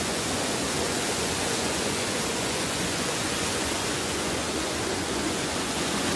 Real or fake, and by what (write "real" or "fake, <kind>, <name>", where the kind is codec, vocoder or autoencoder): fake, vocoder, Vocos